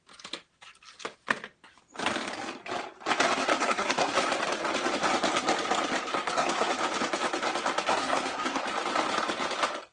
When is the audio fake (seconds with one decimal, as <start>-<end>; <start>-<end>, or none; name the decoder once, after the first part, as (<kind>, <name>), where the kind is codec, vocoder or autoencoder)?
3.5-4.1 (codec, SNAC); 6.1-6.7; 7.9-8.6